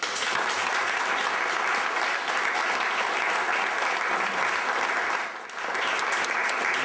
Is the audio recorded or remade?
recorded